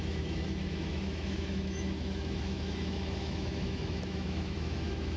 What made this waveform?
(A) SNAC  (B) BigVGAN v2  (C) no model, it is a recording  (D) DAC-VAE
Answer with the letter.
D